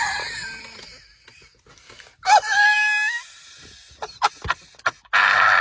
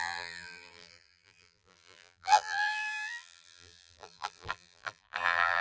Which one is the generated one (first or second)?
second